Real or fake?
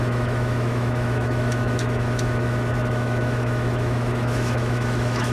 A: fake